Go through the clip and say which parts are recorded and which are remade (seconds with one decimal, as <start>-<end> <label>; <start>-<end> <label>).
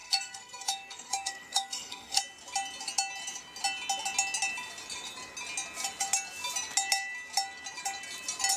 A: 0.0-2.2 remade; 2.2-8.6 recorded